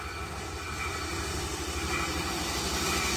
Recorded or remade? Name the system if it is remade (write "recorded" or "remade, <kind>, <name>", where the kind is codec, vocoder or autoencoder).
recorded